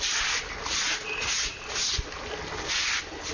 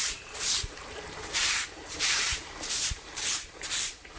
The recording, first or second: first